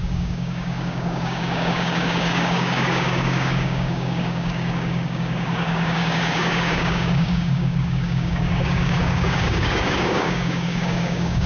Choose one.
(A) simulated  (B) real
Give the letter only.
A